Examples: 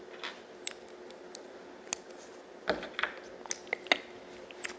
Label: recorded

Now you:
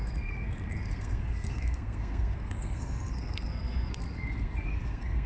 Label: remade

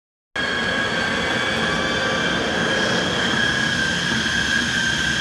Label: recorded